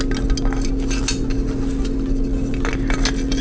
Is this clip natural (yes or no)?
yes